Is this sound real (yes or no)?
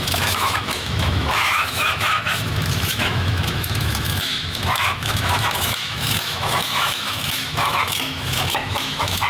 no